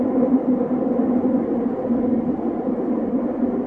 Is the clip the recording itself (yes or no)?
yes